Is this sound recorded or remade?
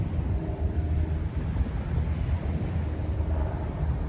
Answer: recorded